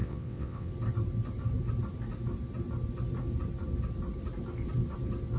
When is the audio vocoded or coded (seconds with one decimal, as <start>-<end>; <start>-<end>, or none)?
0.0-0.7